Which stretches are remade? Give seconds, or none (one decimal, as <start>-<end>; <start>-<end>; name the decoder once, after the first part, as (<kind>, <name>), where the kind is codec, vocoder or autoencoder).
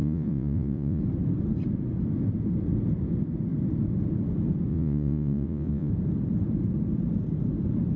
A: 0.0-1.0 (vocoder, Vocos); 4.7-5.9